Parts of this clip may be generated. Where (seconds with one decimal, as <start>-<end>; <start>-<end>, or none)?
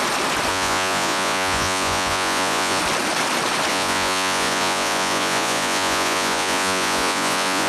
0.5-2.8; 3.7-7.7